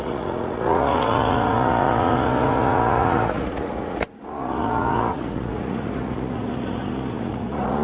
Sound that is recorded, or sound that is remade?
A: remade